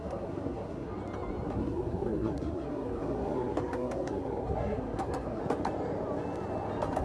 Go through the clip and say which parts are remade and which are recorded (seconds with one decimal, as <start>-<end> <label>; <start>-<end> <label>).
0.0-0.9 remade; 0.9-1.5 recorded; 1.5-5.4 remade; 5.4-7.0 recorded